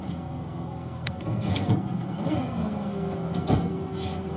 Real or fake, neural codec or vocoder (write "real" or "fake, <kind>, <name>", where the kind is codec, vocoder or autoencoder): fake, codec, SNAC